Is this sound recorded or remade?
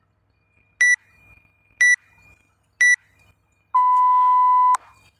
recorded